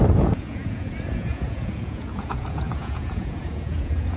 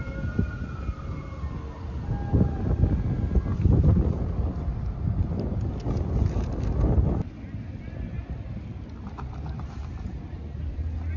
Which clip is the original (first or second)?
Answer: second